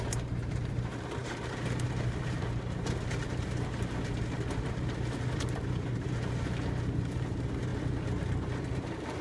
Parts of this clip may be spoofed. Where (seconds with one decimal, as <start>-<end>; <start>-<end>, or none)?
0.0-7.7; 8.7-9.2